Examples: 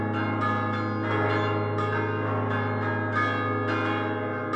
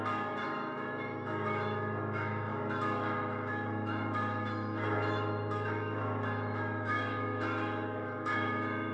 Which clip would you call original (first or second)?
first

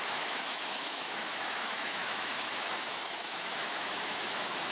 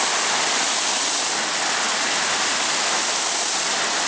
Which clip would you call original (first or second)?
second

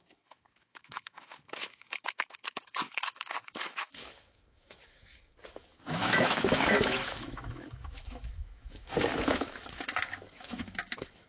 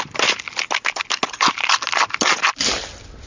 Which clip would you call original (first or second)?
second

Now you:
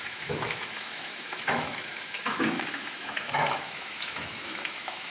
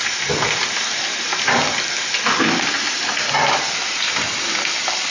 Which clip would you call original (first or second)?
second